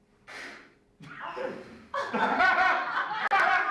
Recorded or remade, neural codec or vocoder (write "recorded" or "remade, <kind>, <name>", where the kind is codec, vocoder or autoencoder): recorded